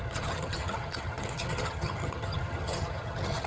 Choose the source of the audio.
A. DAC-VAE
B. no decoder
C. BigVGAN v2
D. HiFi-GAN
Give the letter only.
D